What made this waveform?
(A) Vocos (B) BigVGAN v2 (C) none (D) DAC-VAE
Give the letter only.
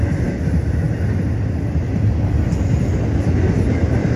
C